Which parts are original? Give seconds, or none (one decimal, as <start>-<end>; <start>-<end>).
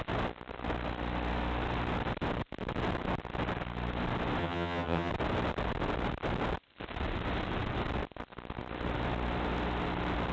0.0-4.4; 5.1-10.3